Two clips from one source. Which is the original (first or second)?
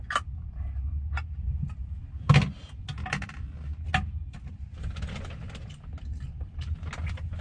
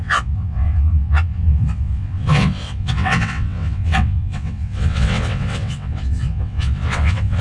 first